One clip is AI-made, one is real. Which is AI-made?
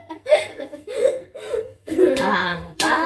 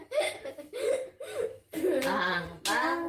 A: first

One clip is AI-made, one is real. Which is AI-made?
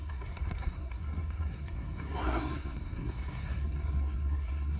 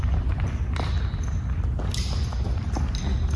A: first